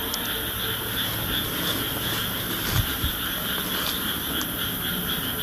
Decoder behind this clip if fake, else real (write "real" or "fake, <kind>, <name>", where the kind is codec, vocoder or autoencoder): real